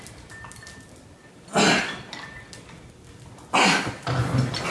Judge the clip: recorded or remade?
recorded